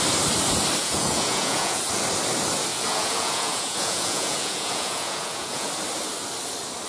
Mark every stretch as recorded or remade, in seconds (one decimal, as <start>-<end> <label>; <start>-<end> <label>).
0.0-0.8 recorded; 0.8-1.8 remade; 1.8-2.7 recorded; 2.7-5.7 remade; 5.7-6.9 recorded